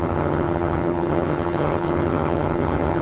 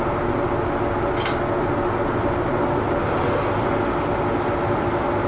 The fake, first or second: first